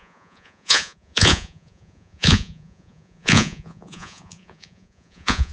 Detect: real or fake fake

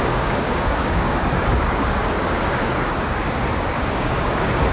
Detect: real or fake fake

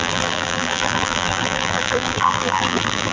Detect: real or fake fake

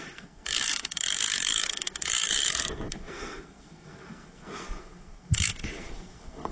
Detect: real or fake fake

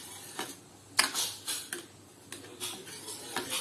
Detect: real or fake real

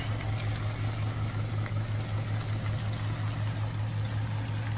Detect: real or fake real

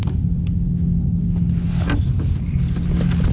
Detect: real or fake real